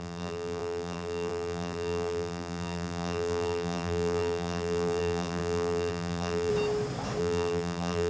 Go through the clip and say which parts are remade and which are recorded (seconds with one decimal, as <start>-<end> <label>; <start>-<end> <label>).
0.0-6.5 remade; 6.5-7.2 recorded; 7.2-8.1 remade